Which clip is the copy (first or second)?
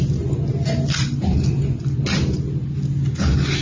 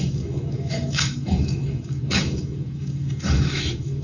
second